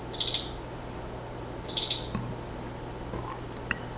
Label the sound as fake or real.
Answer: real